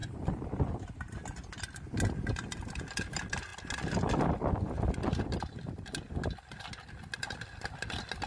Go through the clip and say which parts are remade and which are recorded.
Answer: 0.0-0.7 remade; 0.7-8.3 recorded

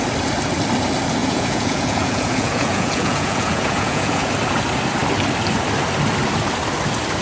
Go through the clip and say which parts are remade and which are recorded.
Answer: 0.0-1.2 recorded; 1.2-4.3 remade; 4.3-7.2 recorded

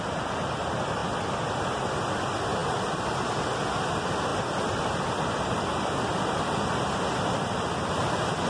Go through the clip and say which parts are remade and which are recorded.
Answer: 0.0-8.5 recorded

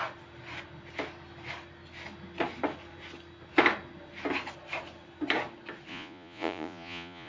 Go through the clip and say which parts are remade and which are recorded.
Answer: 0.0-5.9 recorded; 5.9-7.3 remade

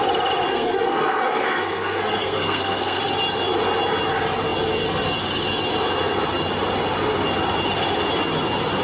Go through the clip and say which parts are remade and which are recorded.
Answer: 0.0-0.5 recorded; 0.5-3.0 remade; 3.0-8.8 recorded

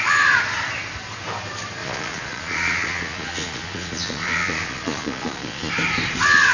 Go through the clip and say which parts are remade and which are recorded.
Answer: 0.0-1.8 recorded; 1.8-5.7 remade; 5.7-6.5 recorded

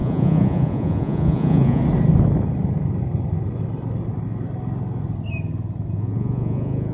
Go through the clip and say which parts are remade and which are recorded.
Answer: 0.0-1.8 remade; 1.8-5.9 recorded; 5.9-6.9 remade

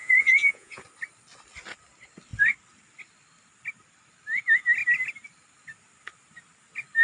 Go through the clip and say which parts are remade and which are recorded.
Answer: 0.0-0.8 remade; 0.8-7.0 recorded